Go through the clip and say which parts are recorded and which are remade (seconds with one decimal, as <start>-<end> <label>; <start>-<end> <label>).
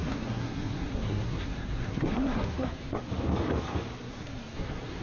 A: 0.0-3.0 remade; 3.0-4.1 recorded; 4.1-5.0 remade